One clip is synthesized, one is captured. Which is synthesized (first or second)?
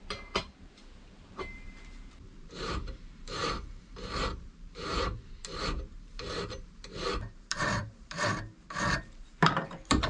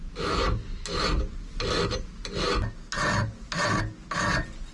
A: first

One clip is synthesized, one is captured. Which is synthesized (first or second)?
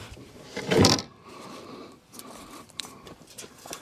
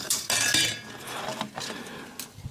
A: first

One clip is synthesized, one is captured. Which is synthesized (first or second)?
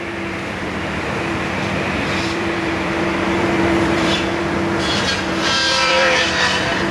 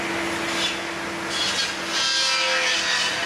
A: first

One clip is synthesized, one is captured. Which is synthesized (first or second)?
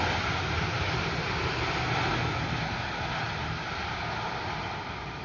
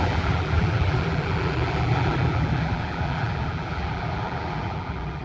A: second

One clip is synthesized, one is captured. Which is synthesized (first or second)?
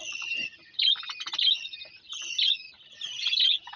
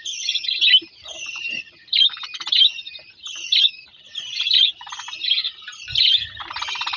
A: second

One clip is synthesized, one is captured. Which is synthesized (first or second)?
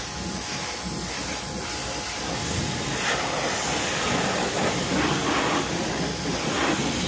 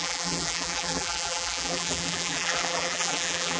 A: second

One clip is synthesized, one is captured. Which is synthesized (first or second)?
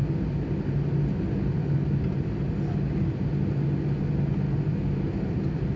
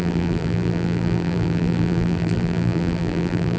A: second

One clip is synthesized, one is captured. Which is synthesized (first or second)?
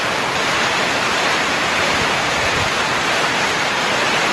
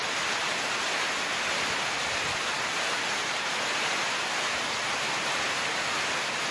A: first